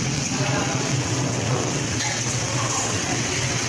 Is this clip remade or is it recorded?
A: remade